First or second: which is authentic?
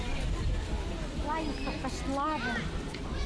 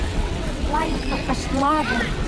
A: first